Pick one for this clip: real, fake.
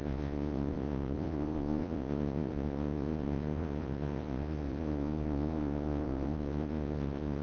fake